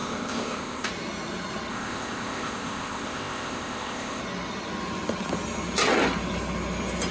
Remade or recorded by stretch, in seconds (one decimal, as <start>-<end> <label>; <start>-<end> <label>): 0.0-0.9 remade; 0.9-1.7 recorded; 1.7-4.2 remade; 4.2-7.1 recorded